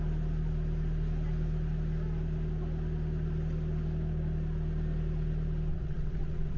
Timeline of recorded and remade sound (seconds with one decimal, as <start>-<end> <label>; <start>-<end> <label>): 0.0-5.7 recorded; 5.7-6.6 remade